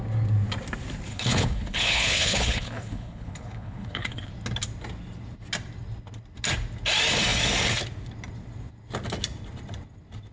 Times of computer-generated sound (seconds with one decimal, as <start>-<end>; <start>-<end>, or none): 1.1-4.3